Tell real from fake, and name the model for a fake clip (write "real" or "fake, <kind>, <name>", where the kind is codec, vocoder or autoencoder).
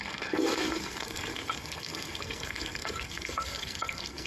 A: fake, codec, SNAC